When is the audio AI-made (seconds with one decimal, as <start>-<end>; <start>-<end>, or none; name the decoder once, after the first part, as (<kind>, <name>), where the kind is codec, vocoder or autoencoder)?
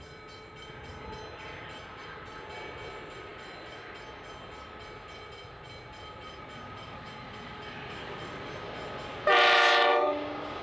9.9-10.6 (codec, DAC)